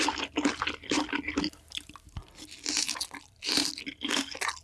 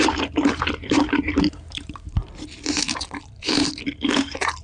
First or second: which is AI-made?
second